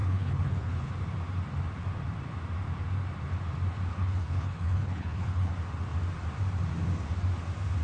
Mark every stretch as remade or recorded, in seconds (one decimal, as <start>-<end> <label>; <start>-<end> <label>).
0.0-0.9 remade; 0.9-3.9 recorded; 3.9-5.5 remade; 5.5-7.8 recorded